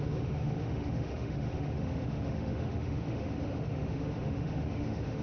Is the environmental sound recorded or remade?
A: remade